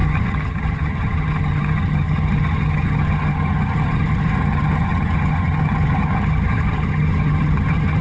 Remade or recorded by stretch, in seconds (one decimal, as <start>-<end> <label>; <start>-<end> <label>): 0.0-8.0 remade

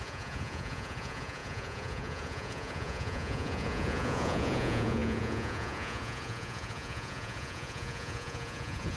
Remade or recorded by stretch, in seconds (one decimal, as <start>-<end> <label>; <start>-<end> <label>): 0.0-9.0 remade